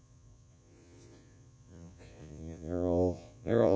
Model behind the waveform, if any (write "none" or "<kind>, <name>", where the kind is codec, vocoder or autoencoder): vocoder, Vocos